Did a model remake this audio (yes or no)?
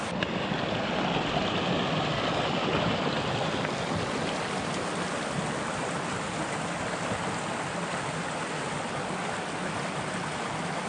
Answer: no